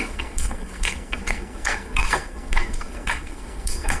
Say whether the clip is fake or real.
fake